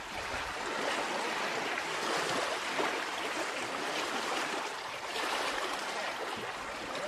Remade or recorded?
recorded